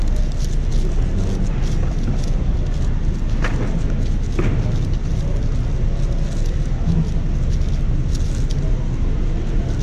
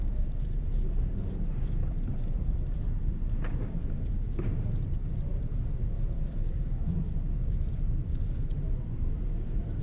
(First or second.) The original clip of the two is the first